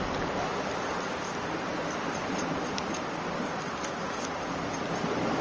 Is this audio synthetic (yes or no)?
no